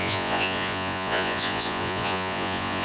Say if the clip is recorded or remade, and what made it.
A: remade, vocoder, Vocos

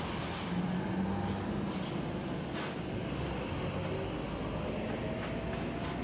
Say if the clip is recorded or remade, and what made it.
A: recorded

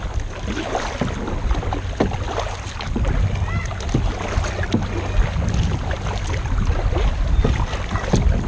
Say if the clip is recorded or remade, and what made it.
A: recorded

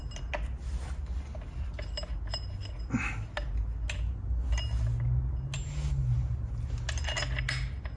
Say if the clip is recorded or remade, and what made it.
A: recorded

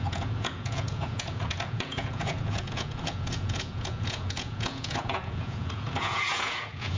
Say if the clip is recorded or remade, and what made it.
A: remade, vocoder, Vocos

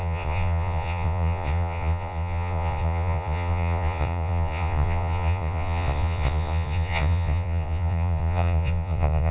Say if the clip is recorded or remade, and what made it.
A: remade, vocoder, Vocos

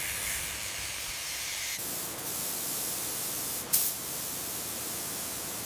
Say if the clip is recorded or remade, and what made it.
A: recorded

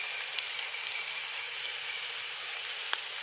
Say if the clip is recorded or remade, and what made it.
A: recorded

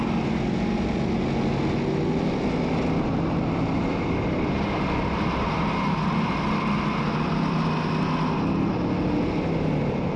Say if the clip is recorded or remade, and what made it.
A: recorded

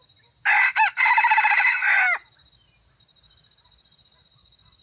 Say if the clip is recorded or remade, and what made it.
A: recorded